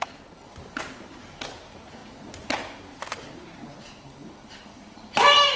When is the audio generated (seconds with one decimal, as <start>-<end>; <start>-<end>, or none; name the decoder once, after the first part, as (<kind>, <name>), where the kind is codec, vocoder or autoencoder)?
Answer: none